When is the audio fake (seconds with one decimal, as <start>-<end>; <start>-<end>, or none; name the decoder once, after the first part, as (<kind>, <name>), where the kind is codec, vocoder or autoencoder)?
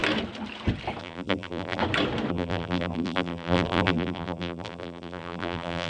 1.0-1.8 (vocoder, BigVGAN v2); 2.3-5.9